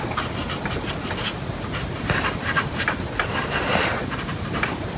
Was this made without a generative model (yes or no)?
yes